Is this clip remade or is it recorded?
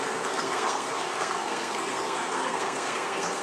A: remade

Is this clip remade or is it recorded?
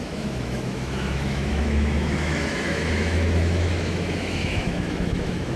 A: remade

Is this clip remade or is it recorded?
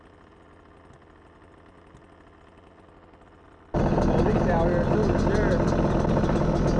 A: recorded